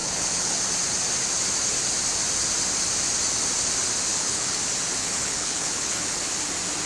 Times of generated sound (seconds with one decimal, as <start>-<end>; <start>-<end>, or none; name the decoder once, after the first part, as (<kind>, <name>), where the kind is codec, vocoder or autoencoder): 0.0-0.6 (codec, HILCodec); 4.1-4.6; 5.0-6.5